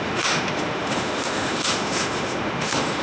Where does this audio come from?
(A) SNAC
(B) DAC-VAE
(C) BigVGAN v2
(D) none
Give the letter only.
B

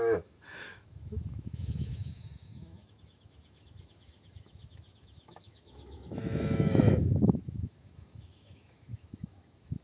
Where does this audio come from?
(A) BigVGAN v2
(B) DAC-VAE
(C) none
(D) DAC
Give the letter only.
B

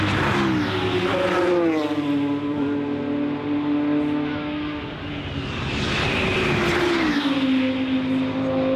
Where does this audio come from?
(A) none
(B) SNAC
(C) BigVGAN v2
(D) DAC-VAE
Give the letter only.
A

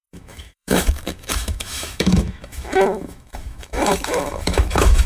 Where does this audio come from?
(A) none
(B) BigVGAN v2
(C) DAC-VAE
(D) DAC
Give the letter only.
C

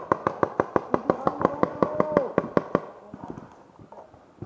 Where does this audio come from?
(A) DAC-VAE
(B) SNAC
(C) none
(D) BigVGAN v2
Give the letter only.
C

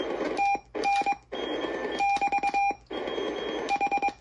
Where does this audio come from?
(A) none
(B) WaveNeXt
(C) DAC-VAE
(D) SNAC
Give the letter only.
A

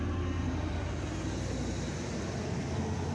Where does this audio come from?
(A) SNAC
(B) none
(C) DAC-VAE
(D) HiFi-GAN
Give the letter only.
B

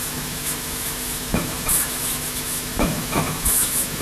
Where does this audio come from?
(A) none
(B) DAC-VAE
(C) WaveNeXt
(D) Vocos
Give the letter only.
B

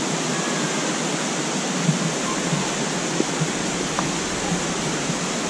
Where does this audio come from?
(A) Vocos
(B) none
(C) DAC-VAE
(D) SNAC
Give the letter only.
B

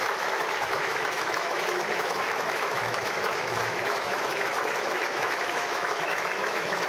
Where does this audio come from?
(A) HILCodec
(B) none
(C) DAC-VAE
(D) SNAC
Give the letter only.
C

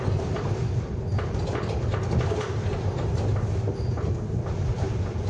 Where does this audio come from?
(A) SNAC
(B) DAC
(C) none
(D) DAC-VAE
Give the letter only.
C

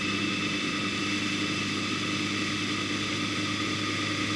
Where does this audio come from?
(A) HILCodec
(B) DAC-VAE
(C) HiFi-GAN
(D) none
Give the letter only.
D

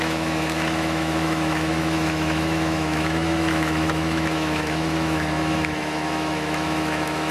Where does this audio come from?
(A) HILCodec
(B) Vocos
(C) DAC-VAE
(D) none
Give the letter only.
C